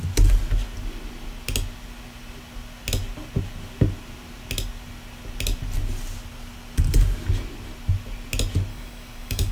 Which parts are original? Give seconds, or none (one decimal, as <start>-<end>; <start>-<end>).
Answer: 0.0-8.7